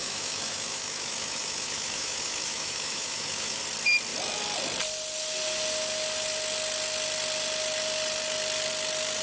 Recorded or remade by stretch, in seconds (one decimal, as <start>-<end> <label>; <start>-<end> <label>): 0.0-3.6 remade; 3.6-9.2 recorded